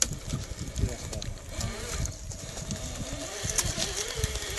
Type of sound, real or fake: real